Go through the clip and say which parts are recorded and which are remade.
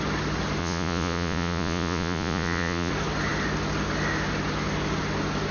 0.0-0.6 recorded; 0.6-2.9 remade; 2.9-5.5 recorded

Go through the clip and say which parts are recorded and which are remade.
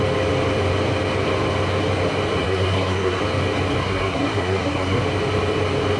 0.0-2.4 recorded; 2.4-3.2 remade; 3.2-3.8 recorded; 3.8-5.0 remade; 5.0-6.0 recorded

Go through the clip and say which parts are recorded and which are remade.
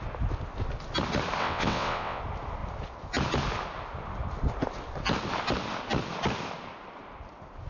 0.0-1.4 recorded; 1.4-2.2 remade; 2.2-7.7 recorded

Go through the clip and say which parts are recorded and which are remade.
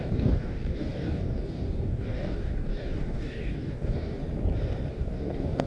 0.0-4.2 remade; 4.2-4.9 recorded; 4.9-5.7 remade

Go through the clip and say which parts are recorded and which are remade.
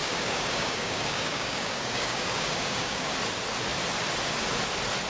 0.0-3.1 remade; 3.1-5.1 recorded